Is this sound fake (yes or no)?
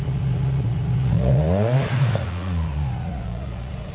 yes